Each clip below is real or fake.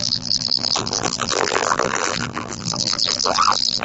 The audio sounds fake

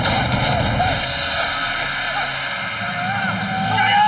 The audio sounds real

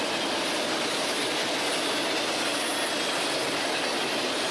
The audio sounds real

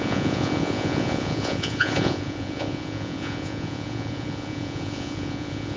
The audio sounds fake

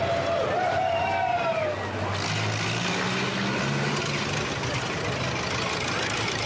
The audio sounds real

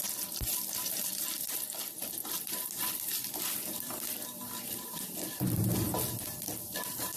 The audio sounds fake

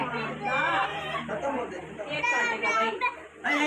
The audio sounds fake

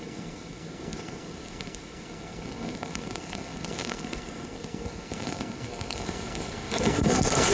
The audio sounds fake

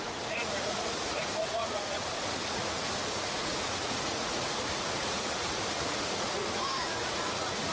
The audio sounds fake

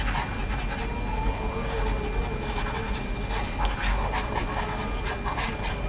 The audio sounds real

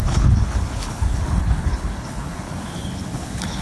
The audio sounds fake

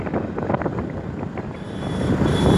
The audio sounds real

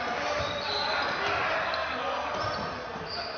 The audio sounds real